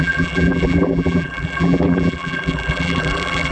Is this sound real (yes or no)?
no